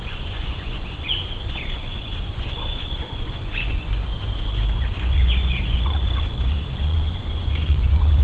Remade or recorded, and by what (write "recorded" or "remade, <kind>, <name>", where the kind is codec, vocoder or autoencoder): remade, vocoder, Vocos